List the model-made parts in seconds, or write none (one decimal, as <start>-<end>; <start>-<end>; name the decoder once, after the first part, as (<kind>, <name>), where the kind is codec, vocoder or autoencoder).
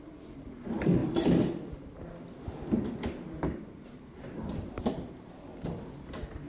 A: none